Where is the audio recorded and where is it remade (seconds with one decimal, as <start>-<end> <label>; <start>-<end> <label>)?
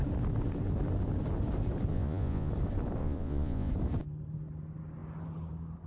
0.0-1.9 recorded; 1.9-2.5 remade; 2.5-3.0 recorded; 3.0-3.7 remade; 3.7-5.9 recorded